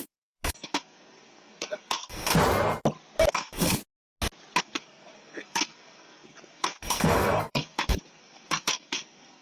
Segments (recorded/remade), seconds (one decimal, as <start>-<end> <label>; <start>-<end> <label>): 0.0-2.3 remade; 2.3-3.3 recorded; 3.3-3.8 remade; 3.8-4.6 recorded; 4.6-9.4 remade